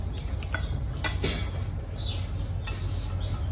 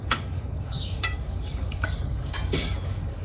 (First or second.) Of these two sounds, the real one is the first